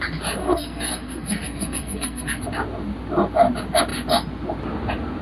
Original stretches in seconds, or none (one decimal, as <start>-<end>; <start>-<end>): 0.0-0.4; 2.4-5.2